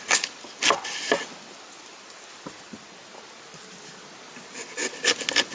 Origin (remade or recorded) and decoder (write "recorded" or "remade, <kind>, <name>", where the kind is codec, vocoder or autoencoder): recorded